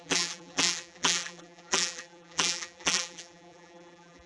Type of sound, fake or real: fake